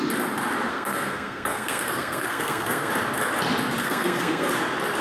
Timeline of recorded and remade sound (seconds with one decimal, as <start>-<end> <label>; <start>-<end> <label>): 0.0-0.7 recorded; 0.7-2.9 remade; 2.9-3.8 recorded; 3.8-4.5 remade; 4.5-5.0 recorded